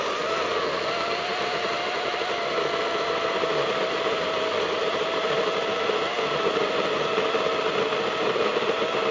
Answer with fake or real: real